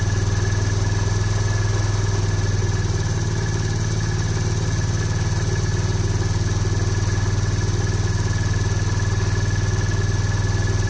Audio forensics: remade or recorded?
recorded